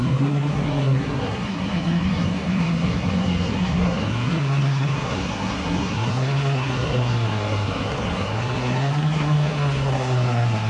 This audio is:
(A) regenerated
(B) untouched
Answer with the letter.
A